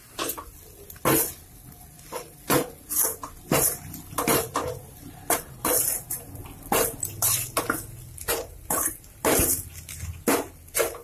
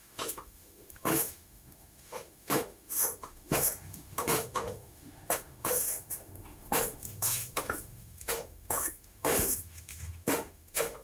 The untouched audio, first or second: first